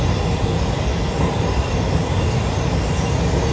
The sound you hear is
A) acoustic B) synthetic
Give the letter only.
A